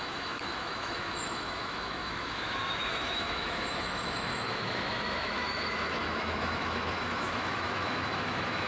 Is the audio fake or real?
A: fake